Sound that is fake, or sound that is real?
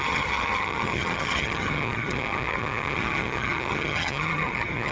fake